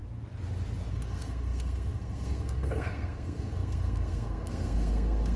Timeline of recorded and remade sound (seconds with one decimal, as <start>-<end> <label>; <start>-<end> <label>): 0.0-0.9 recorded; 0.9-5.4 remade